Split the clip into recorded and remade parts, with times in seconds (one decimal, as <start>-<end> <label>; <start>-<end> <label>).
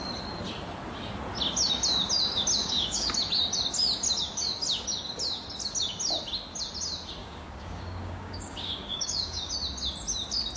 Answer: 0.0-2.6 recorded; 2.6-3.1 remade; 3.1-7.2 recorded; 7.2-9.5 remade; 9.5-10.6 recorded